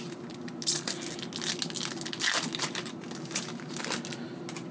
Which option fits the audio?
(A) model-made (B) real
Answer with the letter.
B